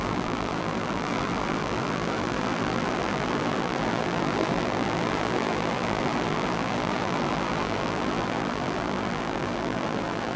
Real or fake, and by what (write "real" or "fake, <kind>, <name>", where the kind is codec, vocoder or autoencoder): fake, vocoder, BigVGAN v2